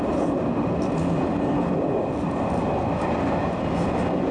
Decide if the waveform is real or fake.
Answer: real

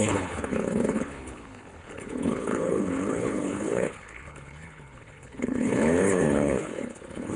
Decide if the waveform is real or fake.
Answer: fake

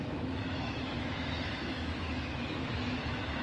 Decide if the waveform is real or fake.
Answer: fake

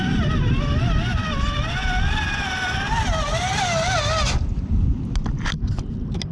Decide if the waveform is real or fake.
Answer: real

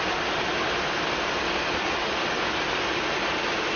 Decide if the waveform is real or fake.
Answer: real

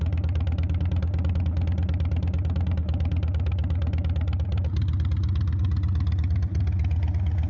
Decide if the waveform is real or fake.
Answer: real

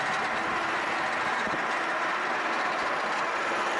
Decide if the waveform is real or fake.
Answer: real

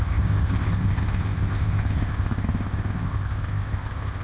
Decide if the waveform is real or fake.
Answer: fake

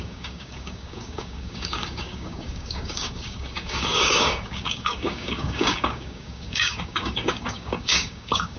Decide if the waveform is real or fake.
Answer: fake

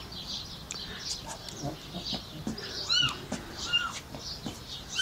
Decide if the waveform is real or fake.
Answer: real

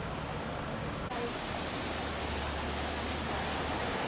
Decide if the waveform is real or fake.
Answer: real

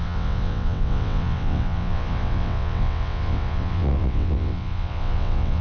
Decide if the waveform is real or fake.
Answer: fake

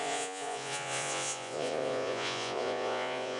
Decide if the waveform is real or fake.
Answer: fake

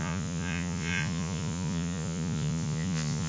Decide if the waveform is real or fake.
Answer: fake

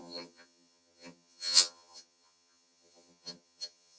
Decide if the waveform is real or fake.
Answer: fake